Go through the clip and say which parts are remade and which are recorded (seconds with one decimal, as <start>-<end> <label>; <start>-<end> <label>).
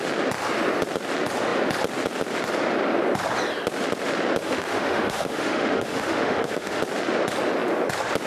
0.0-4.4 recorded; 4.4-6.8 remade; 6.8-8.3 recorded